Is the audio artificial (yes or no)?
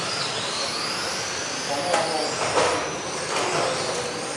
no